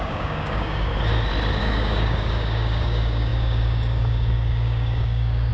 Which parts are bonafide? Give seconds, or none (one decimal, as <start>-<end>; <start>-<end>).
0.9-1.6